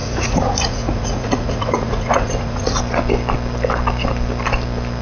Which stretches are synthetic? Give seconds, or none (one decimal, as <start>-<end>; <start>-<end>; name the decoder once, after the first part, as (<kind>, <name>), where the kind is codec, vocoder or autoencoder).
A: 0.0-2.8 (vocoder, Vocos)